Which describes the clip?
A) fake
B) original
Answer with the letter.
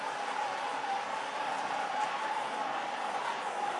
B